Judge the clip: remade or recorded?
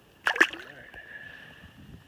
recorded